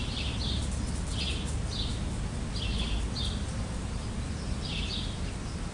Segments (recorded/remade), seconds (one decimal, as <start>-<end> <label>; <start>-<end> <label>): 0.0-5.7 recorded